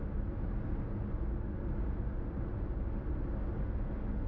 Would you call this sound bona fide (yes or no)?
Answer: yes